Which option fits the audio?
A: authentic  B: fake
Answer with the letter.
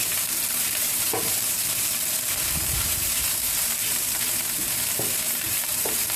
B